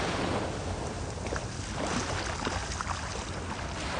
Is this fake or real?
real